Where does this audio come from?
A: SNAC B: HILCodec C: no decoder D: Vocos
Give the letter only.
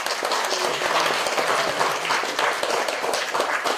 C